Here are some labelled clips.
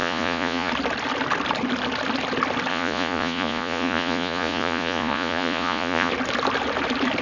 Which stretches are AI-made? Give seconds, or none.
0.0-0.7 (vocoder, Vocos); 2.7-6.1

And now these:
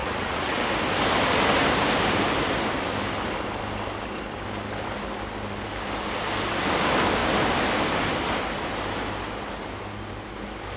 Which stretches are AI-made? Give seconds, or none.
0.0-0.6 (vocoder, Vocos)

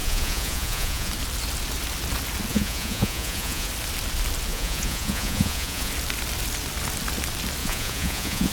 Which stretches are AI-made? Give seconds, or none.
0.0-1.1 (vocoder, Vocos); 2.5-3.7; 4.5-5.9; 7.6-8.5

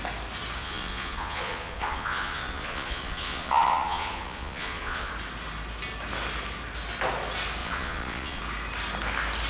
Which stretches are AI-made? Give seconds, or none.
0.6-5.1 (vocoder, Vocos); 7.6-8.4